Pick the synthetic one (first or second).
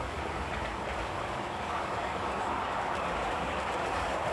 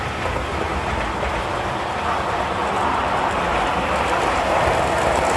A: first